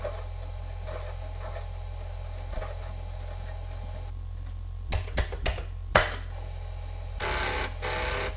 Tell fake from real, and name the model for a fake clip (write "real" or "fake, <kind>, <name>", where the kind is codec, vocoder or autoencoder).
real